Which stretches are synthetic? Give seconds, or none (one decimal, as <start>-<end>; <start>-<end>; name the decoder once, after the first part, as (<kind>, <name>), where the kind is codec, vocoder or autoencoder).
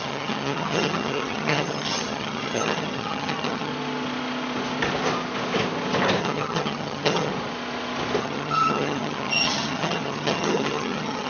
0.0-3.7 (vocoder, HiFi-GAN); 6.2-7.3; 8.2-11.3